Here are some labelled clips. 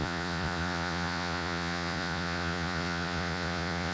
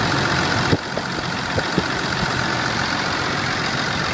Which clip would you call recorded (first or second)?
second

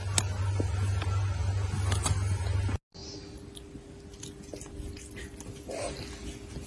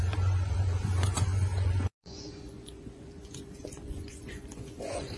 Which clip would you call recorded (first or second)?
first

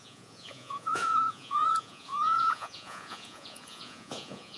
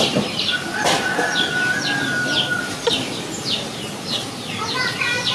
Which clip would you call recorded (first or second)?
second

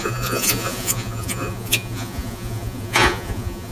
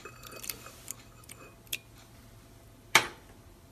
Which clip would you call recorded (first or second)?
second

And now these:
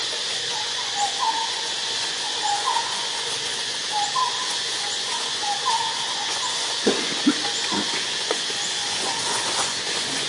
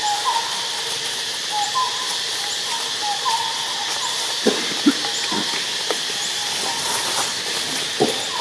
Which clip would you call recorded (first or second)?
second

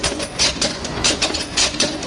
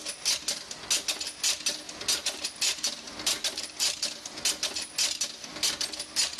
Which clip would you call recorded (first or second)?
second